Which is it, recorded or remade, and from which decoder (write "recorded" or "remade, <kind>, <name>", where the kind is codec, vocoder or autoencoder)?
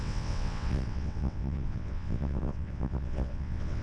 remade, vocoder, WaveNeXt